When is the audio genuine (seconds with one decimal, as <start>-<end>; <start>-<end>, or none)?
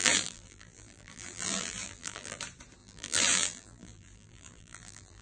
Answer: 2.4-2.8